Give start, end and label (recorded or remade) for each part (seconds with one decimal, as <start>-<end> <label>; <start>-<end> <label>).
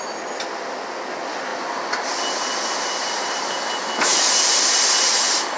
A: 0.0-5.6 recorded